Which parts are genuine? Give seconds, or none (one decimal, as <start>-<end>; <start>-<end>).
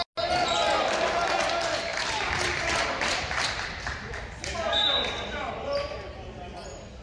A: 0.0-1.9; 5.5-7.0